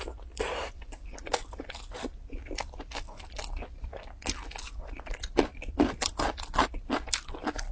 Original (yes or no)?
yes